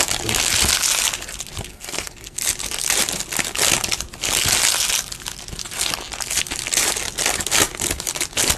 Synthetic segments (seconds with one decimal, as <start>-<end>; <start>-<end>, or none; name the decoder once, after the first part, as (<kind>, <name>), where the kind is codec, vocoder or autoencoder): 1.7-2.4 (codec, SNAC)